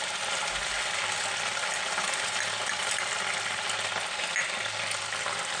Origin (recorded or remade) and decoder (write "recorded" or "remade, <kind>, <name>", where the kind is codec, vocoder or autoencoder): recorded